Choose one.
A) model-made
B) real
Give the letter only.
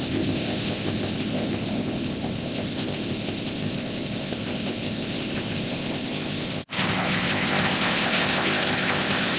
A